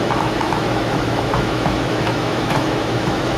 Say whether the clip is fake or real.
fake